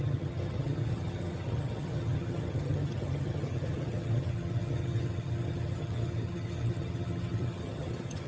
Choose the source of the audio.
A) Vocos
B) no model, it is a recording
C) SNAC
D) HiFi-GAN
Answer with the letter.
D